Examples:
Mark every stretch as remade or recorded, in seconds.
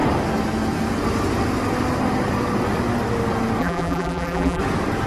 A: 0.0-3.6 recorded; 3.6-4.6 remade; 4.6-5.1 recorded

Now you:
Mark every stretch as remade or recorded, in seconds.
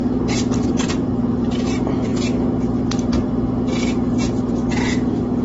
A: 0.0-0.8 recorded; 0.8-2.1 remade; 2.1-4.2 recorded; 4.2-5.4 remade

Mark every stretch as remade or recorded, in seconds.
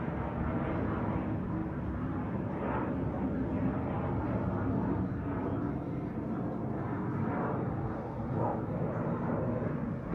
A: 0.0-1.6 recorded; 1.6-2.6 remade; 2.6-10.1 recorded